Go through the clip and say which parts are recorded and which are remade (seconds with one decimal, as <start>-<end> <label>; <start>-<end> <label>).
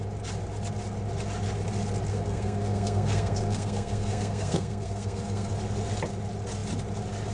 0.0-2.1 recorded; 2.1-5.5 remade; 5.5-7.3 recorded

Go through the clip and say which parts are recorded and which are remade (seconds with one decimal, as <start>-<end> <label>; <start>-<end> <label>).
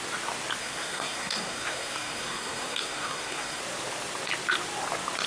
0.0-0.6 recorded; 0.6-3.6 remade; 3.6-5.3 recorded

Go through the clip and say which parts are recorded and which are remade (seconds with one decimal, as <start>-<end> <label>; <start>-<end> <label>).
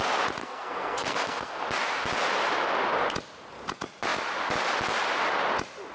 0.0-0.4 recorded; 0.4-1.6 remade; 1.6-5.9 recorded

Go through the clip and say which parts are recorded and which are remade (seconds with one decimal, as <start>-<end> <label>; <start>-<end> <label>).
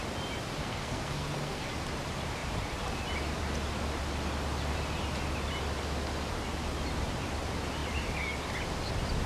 0.0-0.6 recorded; 0.6-1.7 remade; 1.7-9.3 recorded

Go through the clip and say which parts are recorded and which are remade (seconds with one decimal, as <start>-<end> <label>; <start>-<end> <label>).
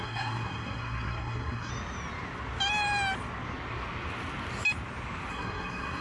0.0-1.7 remade; 1.7-5.3 recorded; 5.3-6.0 remade